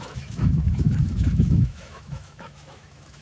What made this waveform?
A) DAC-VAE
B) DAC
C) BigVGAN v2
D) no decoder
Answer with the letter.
A